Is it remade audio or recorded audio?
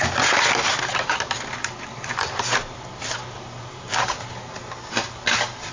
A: recorded